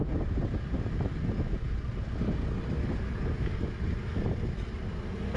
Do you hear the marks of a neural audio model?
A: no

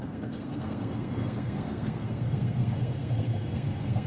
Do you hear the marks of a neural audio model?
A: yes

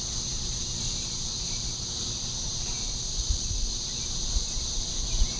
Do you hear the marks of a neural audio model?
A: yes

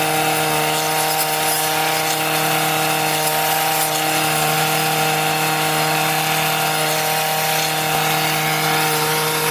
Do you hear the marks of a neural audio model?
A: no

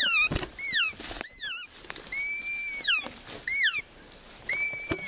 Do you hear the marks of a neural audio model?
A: yes